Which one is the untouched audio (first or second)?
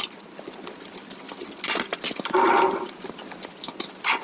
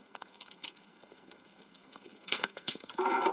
first